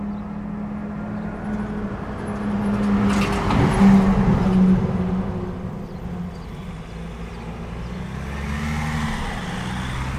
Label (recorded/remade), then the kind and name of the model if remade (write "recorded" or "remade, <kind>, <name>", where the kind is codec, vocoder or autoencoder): recorded